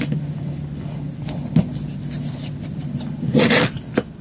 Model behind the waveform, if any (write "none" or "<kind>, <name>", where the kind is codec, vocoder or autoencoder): none